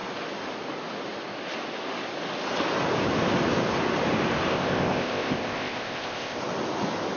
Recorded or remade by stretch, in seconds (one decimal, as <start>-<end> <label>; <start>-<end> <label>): 0.0-4.5 recorded; 4.5-6.4 remade; 6.4-7.2 recorded